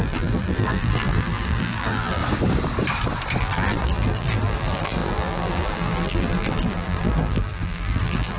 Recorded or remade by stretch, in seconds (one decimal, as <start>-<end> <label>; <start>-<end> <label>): 0.0-2.2 remade; 2.2-3.4 recorded; 3.4-8.4 remade